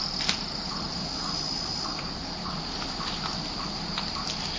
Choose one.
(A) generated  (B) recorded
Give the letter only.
B